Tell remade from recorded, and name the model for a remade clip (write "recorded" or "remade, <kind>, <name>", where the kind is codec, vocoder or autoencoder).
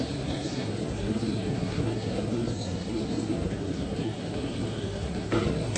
remade, codec, SNAC